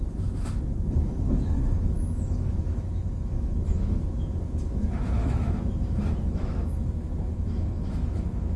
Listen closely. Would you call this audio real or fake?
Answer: fake